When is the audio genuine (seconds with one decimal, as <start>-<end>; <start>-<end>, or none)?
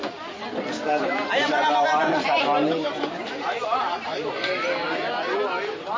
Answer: 0.0-1.4; 5.0-6.0